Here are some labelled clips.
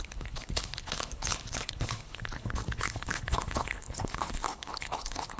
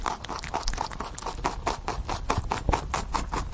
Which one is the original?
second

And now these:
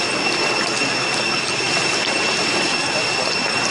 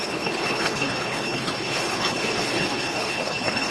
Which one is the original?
first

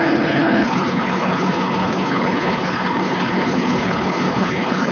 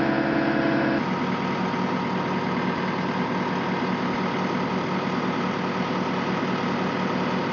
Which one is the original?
second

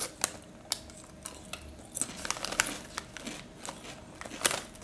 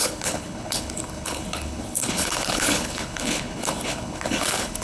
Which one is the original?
first